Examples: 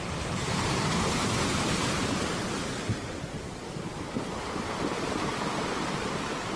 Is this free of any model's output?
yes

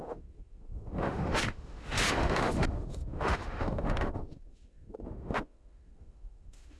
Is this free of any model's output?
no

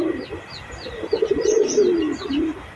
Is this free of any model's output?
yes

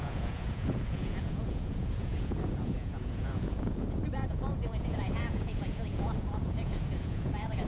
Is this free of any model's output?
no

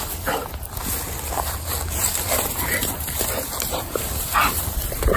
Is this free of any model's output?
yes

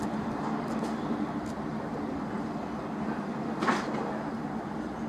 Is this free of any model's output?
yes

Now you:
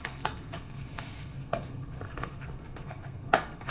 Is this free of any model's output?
no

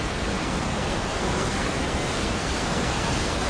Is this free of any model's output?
no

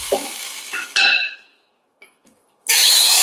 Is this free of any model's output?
no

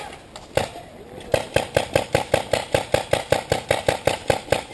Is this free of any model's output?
yes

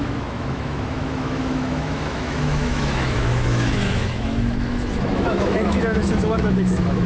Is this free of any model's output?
no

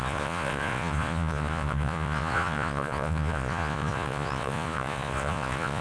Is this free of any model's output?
no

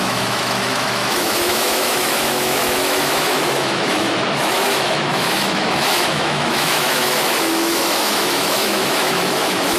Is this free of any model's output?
no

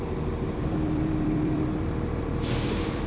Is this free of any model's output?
no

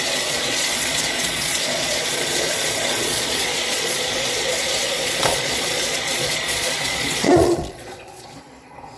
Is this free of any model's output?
no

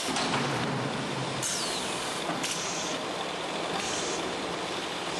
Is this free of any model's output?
yes